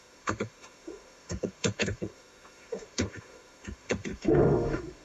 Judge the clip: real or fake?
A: fake